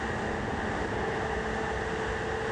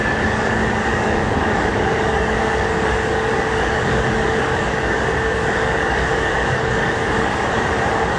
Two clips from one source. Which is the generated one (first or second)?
second